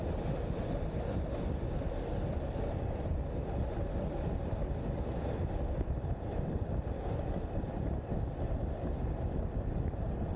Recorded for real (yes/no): yes